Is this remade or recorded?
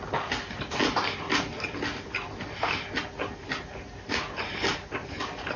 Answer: recorded